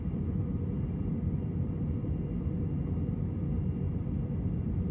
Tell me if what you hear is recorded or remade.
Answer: recorded